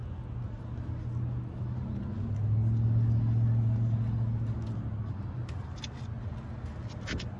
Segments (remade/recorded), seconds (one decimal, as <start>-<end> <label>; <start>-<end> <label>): 0.0-7.4 recorded